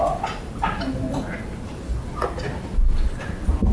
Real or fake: real